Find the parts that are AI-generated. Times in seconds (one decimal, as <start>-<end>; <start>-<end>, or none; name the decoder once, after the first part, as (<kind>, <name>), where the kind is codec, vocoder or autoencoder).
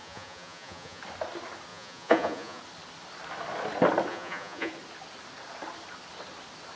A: 0.0-1.0 (vocoder, Vocos); 1.7-2.6; 4.1-4.7